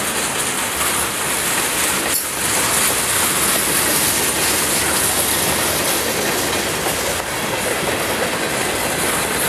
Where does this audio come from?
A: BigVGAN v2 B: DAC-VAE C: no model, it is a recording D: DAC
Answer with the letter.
C